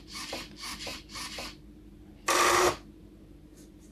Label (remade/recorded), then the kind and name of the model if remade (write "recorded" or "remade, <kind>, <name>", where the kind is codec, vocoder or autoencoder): remade, vocoder, BigVGAN v2